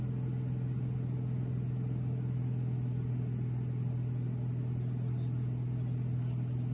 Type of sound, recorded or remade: recorded